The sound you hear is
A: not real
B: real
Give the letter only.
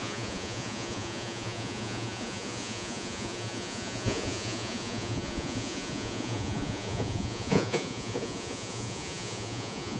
A